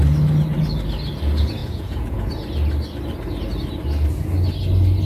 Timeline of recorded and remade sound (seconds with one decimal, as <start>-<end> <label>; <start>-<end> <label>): 0.0-1.6 recorded; 1.6-2.3 remade; 2.3-5.1 recorded